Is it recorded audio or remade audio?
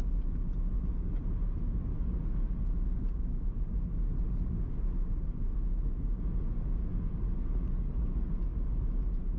recorded